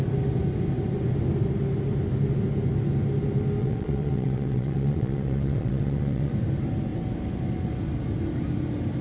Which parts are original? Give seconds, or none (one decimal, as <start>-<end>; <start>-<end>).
0.0-3.6; 6.3-9.0